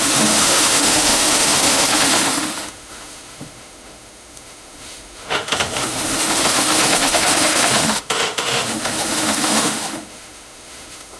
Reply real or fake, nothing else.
fake